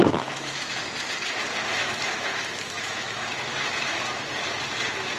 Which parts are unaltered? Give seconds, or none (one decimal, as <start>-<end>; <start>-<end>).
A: 0.6-1.8; 4.0-5.2